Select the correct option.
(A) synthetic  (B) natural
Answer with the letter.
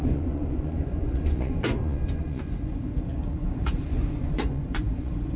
A